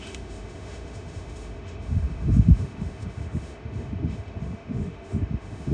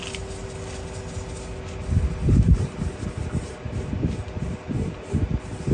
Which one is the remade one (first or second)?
first